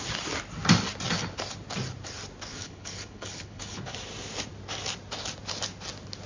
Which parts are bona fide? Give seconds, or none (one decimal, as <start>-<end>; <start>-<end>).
0.0-2.5; 3.8-6.3